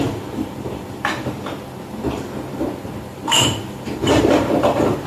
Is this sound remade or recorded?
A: remade